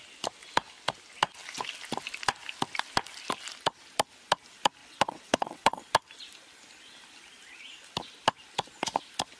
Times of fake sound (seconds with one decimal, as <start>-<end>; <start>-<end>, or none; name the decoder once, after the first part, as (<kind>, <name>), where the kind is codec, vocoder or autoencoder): 4.8-5.8 (vocoder, WaveNeXt)